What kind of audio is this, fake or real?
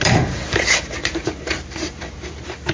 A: fake